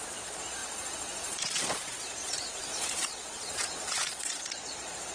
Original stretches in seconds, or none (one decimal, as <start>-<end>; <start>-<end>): none